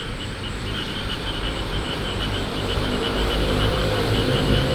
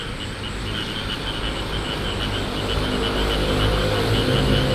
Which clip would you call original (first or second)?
second